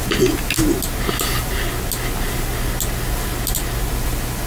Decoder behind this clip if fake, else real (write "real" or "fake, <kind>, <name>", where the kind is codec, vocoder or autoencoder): real